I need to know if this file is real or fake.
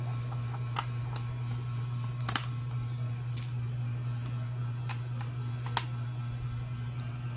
real